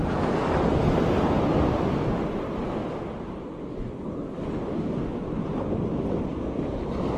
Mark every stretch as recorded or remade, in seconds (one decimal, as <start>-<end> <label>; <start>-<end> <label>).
0.0-7.2 recorded